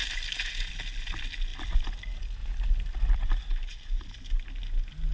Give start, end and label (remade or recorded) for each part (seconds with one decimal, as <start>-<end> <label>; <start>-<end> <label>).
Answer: 0.0-0.7 remade; 0.7-3.7 recorded; 3.7-4.2 remade; 4.2-5.1 recorded